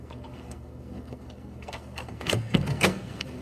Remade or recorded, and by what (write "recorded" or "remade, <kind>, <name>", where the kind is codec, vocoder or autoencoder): remade, codec, SNAC